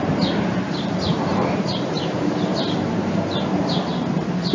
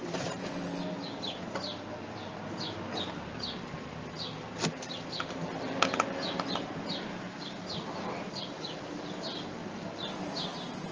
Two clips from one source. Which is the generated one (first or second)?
first